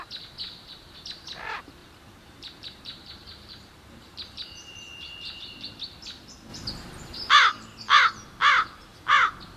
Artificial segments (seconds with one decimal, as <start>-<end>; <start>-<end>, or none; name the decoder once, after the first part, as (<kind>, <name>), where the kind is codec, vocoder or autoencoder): 1.8-5.7 (vocoder, BigVGAN v2)